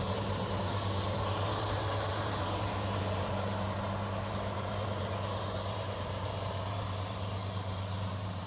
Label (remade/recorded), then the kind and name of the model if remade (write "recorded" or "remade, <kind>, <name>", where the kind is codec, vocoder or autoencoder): remade, vocoder, BigVGAN v2